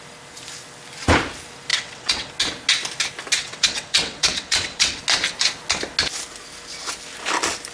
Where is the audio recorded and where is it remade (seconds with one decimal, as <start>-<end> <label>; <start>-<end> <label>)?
0.0-1.7 recorded; 1.7-2.3 remade; 2.3-3.4 recorded; 3.4-5.0 remade; 5.0-7.7 recorded